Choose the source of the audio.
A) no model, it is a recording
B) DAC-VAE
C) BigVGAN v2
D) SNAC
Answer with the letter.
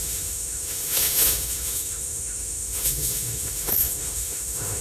B